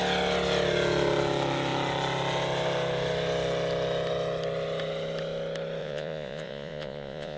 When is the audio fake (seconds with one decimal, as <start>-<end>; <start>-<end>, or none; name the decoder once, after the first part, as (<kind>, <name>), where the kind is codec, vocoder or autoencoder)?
5.8-7.4 (vocoder, Vocos)